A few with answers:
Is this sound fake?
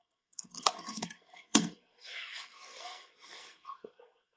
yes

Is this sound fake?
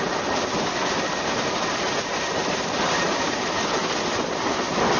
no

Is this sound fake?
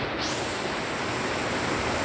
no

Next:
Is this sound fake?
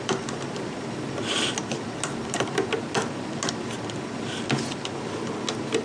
no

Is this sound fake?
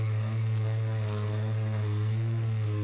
yes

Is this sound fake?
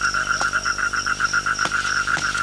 no